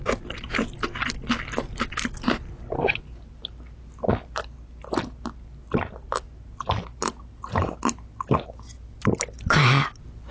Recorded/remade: recorded